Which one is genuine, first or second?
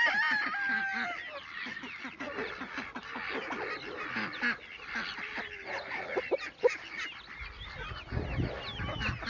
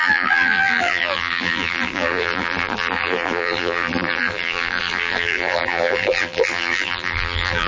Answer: first